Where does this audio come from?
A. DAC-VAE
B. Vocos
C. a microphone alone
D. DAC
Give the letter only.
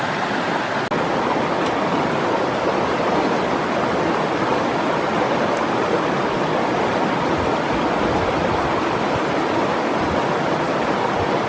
C